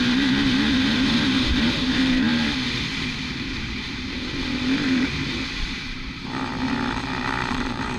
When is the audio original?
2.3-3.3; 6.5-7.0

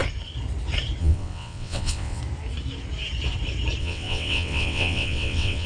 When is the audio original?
0.0-1.0; 2.2-3.8

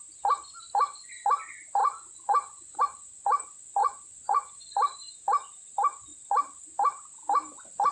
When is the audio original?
0.0-1.8; 2.8-3.8; 4.7-7.9